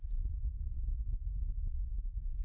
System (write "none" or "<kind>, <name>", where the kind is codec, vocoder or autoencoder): none